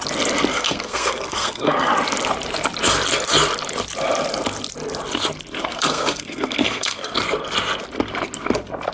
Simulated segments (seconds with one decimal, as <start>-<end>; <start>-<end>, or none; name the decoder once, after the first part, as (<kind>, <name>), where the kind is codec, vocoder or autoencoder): 0.5-1.9 (codec, SNAC); 5.6-7.2

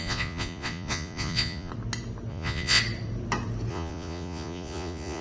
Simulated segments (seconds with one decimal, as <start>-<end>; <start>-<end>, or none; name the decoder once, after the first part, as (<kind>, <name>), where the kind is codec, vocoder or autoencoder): 0.0-1.7 (vocoder, Vocos); 2.3-2.8; 3.7-5.2